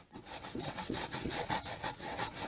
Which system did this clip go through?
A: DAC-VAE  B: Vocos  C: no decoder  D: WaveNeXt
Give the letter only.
D